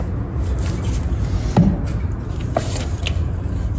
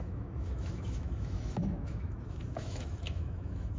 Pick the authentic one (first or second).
first